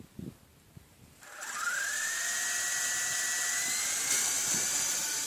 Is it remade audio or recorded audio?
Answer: recorded